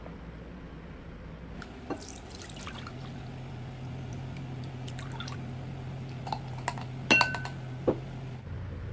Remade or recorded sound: recorded